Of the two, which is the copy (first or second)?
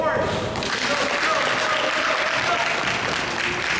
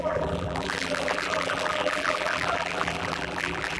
second